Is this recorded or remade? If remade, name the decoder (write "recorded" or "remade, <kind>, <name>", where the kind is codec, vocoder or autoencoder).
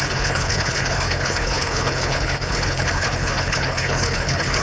remade, codec, HILCodec